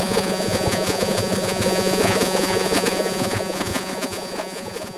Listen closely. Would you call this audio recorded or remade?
remade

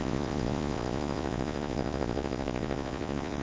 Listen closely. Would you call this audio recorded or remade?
remade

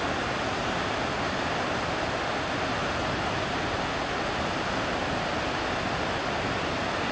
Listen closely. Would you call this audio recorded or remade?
recorded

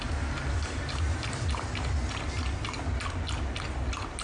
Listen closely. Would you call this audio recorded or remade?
recorded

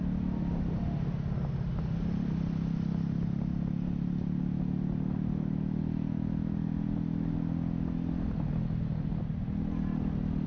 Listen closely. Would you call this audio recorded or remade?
recorded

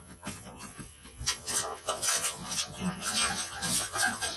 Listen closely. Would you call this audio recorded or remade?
remade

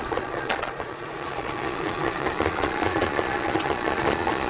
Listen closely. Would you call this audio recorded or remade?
remade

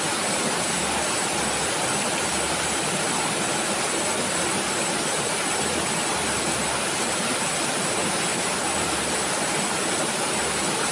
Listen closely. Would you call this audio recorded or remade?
recorded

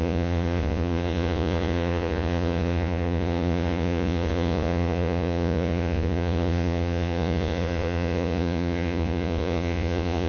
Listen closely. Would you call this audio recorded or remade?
remade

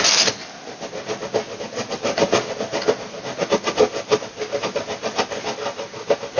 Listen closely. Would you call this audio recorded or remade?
recorded